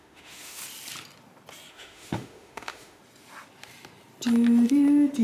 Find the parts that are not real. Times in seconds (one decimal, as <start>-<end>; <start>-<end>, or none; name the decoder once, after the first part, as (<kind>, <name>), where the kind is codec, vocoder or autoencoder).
0.0-0.6 (autoencoder, DAC-VAE); 1.7-3.0